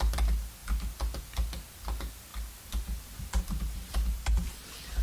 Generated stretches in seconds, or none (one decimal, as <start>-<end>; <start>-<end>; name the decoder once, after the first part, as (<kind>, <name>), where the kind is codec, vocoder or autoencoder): none